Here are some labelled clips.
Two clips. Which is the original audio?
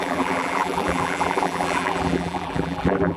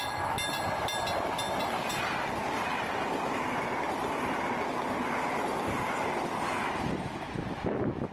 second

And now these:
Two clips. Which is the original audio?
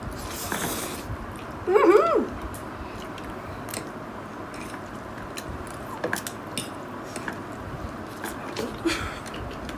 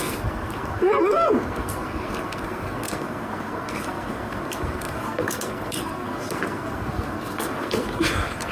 first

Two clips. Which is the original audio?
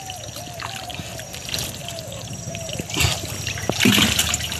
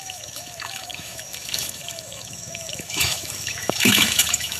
first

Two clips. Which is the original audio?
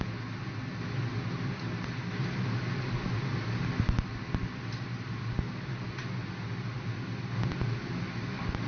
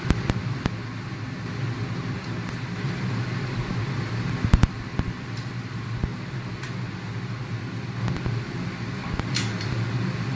first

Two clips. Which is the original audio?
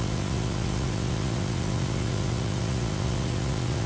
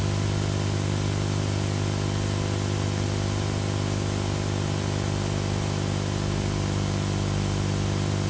second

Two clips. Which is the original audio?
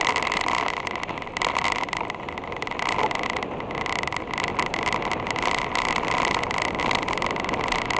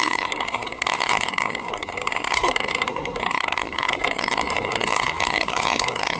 first